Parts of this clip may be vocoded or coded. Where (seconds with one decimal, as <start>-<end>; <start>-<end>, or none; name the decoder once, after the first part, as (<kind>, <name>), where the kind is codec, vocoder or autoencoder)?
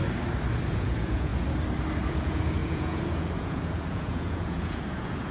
0.7-1.3 (vocoder, Vocos); 2.1-5.3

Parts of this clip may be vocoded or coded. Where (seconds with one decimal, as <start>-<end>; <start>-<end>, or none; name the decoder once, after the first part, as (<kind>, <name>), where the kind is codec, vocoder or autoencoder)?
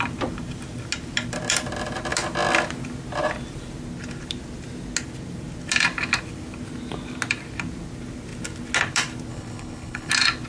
9.3-10.1 (codec, HILCodec)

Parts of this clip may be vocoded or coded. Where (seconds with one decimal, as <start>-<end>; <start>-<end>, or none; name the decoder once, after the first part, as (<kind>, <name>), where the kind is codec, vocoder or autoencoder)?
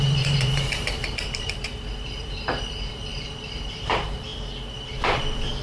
0.0-4.3 (vocoder, BigVGAN v2)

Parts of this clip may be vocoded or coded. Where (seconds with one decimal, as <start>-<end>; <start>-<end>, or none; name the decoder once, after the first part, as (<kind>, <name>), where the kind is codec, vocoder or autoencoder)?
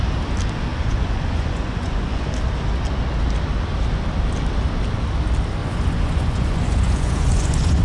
0.7-2.3 (vocoder, Vocos); 5.6-7.8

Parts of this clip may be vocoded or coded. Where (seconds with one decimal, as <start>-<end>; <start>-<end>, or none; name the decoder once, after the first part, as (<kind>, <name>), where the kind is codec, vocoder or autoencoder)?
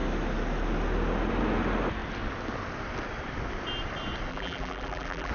4.3-5.3 (vocoder, BigVGAN v2)